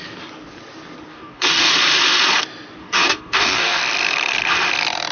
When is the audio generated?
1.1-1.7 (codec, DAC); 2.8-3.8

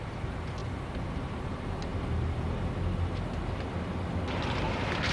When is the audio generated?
none

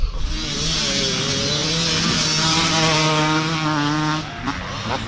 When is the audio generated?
none

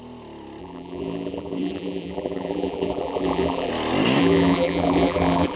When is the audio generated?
0.6-3.7 (vocoder, BigVGAN v2); 4.2-5.6

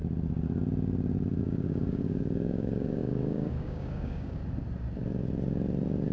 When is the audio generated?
1.4-4.4 (codec, DAC)

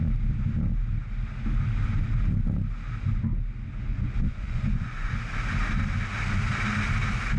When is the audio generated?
3.9-5.1 (vocoder, Vocos)

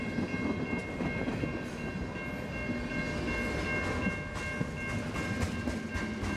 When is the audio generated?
none